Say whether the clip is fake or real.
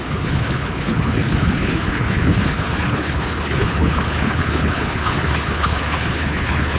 fake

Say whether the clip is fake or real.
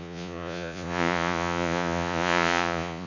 fake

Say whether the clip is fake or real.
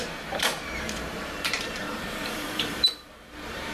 fake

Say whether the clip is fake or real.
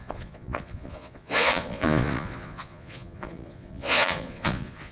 fake